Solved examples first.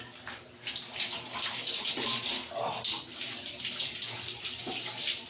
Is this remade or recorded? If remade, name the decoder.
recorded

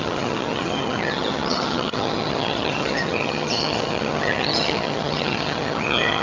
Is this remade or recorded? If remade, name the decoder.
remade, vocoder, HiFi-GAN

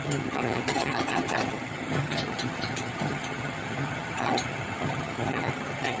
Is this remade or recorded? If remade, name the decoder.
remade, vocoder, HiFi-GAN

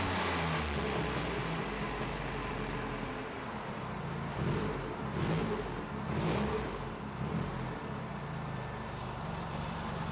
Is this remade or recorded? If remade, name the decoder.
recorded